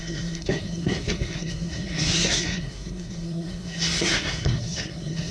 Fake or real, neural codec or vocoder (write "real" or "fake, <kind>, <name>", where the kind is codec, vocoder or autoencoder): fake, codec, SNAC